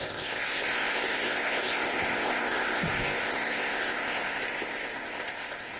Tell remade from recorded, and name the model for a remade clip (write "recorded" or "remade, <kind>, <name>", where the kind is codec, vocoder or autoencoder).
remade, codec, ZipCodec